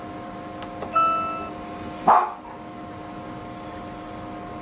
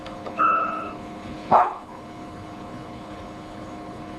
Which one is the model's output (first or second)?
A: second